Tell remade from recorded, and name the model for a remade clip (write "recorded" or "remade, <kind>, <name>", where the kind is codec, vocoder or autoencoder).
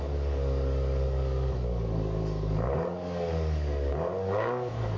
remade, codec, DAC